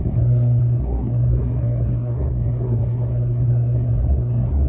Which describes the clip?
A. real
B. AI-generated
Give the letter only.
B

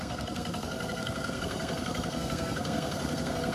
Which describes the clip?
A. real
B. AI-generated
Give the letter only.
B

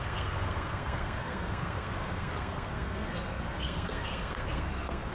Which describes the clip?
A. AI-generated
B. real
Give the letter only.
A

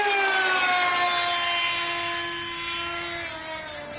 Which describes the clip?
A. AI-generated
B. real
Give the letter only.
B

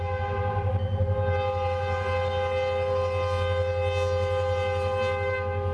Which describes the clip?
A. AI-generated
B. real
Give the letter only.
B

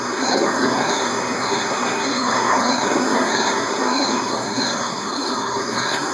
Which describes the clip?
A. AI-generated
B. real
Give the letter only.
A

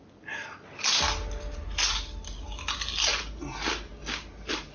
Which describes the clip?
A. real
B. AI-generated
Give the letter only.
A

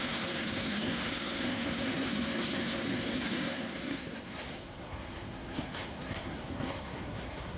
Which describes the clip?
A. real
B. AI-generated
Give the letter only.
B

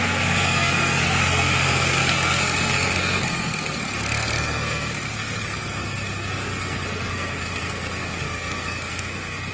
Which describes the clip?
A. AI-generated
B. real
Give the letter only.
A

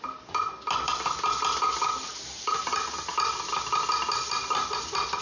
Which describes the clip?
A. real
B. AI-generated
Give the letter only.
A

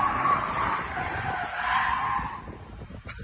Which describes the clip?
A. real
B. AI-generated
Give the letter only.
A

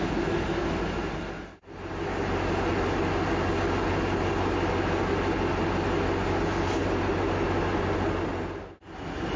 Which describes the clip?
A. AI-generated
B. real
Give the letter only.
B